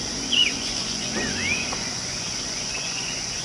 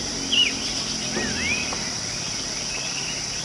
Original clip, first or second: second